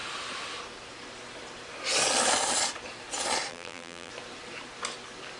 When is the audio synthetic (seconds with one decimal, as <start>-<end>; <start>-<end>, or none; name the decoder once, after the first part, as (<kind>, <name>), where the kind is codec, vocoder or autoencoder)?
3.5-4.1 (vocoder, BigVGAN v2)